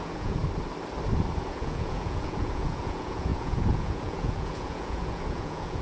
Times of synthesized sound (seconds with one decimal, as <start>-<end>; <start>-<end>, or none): 0.0-0.4; 1.4-5.8